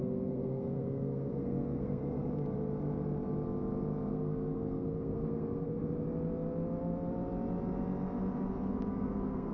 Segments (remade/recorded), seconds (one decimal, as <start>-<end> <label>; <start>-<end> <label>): 0.0-2.0 remade; 2.0-4.1 recorded; 4.1-5.8 remade; 5.8-8.9 recorded; 8.9-9.5 remade